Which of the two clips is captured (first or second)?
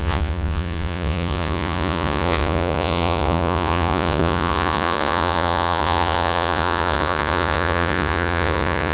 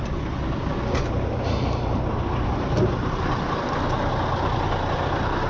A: second